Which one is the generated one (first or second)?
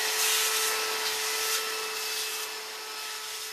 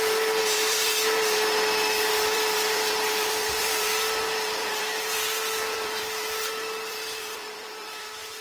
second